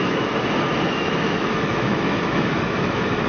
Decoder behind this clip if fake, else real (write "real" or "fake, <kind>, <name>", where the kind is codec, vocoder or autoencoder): fake, autoencoder, DAC-VAE